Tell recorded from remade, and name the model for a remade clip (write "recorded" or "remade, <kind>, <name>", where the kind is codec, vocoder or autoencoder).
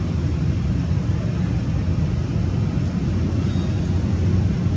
recorded